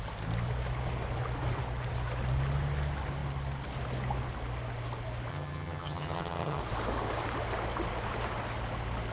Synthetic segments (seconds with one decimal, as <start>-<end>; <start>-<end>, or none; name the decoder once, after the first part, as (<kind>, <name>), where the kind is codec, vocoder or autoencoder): 5.3-6.6 (vocoder, HiFi-GAN)